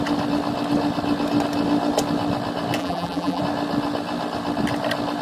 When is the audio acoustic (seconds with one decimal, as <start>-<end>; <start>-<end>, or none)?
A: 0.0-2.8; 3.4-5.2